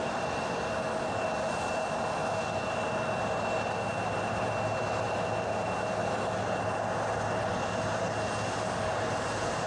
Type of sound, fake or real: real